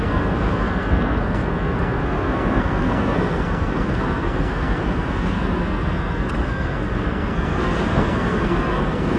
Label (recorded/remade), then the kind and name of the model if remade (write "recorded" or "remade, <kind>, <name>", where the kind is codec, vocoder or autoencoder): remade, codec, SNAC